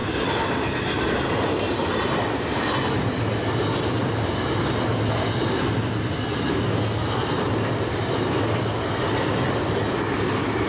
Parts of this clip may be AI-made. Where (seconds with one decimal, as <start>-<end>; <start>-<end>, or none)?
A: none